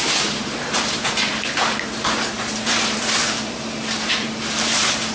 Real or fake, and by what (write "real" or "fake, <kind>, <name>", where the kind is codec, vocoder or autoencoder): fake, vocoder, BigVGAN v2